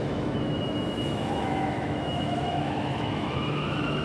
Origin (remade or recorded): remade